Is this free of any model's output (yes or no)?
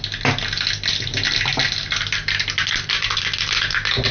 yes